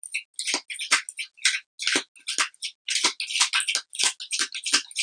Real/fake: real